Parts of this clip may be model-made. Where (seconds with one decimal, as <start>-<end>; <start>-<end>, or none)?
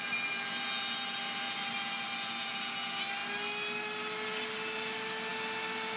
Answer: none